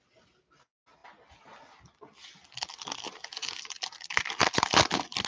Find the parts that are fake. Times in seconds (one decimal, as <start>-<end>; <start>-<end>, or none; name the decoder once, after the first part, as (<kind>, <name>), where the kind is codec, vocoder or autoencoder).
none